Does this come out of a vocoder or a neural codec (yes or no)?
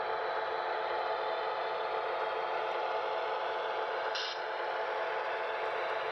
no